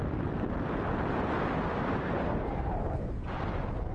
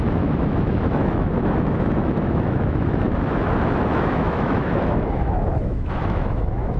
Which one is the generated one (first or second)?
second